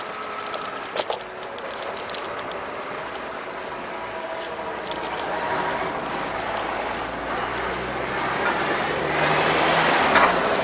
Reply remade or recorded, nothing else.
recorded